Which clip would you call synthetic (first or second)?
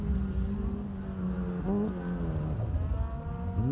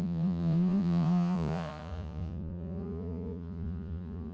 second